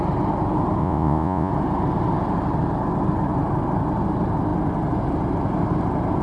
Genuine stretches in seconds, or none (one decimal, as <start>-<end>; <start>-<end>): 0.0-0.8; 1.5-6.2